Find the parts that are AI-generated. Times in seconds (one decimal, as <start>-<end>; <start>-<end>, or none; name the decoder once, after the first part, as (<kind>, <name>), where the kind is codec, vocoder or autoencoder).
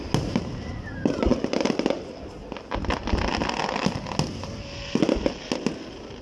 none